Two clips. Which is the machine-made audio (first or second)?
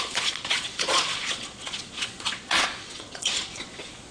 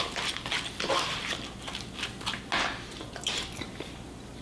first